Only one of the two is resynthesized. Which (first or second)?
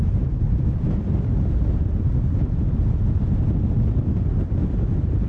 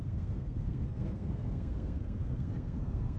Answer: second